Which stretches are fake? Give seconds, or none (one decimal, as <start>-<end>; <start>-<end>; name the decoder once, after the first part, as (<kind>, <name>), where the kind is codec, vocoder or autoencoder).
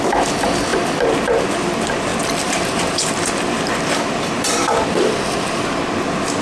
2.1-5.9 (vocoder, BigVGAN v2)